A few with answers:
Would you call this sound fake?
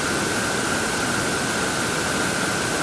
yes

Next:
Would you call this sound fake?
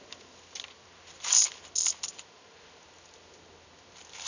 no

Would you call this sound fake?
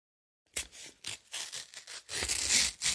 no